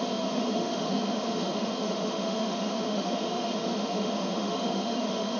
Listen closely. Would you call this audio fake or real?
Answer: fake